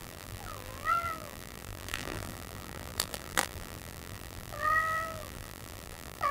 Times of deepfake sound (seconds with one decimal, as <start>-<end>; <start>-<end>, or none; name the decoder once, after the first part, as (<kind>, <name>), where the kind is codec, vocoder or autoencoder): 0.0-6.3 (vocoder, BigVGAN v2)